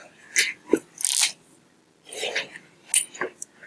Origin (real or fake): real